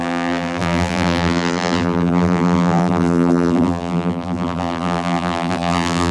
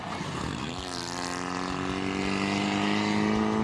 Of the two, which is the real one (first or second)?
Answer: second